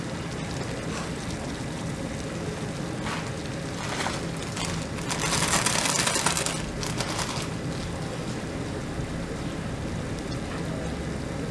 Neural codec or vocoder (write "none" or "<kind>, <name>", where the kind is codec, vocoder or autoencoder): none